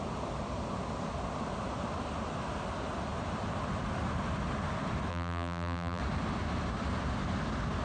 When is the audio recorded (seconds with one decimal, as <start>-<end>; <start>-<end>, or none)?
0.0-5.1; 6.0-7.8